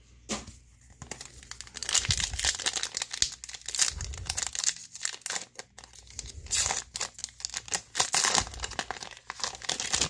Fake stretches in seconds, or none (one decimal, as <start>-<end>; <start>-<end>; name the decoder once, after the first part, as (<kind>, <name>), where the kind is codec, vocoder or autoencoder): none